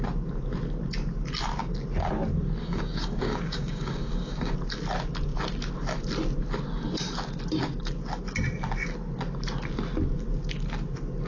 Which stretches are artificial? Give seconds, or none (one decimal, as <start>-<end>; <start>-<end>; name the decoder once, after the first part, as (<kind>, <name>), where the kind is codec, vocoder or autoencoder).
2.6-4.5 (codec, DAC)